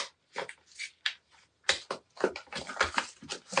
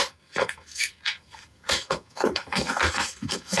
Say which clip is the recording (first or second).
first